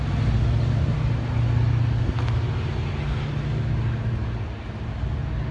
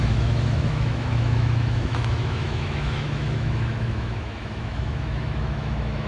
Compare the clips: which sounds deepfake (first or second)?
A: second